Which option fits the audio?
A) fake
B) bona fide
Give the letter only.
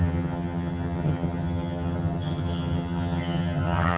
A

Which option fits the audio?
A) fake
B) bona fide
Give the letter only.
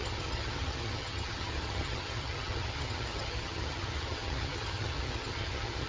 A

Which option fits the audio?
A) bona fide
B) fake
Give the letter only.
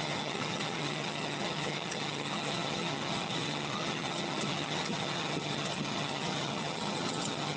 B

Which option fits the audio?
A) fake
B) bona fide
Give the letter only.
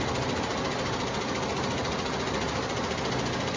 B